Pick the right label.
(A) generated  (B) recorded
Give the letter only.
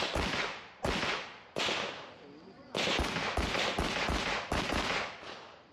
B